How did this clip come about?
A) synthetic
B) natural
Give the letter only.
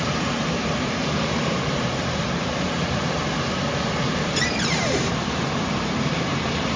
A